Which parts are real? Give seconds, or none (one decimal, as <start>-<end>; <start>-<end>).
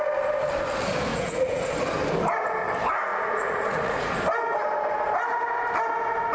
0.0-1.1; 1.7-3.1; 4.1-6.3